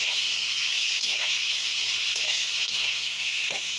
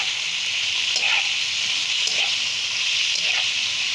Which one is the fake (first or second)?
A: first